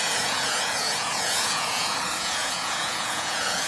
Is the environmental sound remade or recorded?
remade